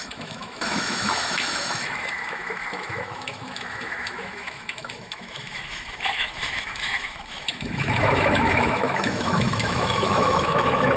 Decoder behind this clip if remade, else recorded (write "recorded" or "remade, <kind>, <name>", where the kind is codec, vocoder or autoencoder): remade, autoencoder, DAC-VAE